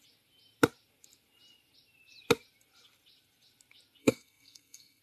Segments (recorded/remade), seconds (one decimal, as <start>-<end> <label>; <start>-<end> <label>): 0.0-4.0 recorded; 4.0-5.0 remade